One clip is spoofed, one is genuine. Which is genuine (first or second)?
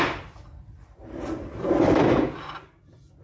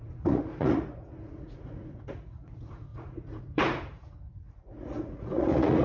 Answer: first